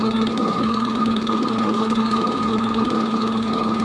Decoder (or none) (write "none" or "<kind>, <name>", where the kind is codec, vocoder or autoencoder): codec, SNAC